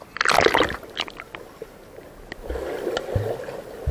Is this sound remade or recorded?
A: recorded